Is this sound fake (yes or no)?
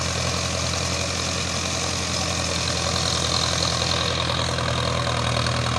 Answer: no